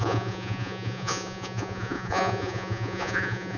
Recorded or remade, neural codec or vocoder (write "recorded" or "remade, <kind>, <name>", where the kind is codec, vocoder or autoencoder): remade, vocoder, Vocos